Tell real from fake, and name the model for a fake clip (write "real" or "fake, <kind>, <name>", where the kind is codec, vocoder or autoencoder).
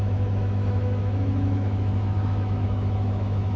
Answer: fake, autoencoder, DAC-VAE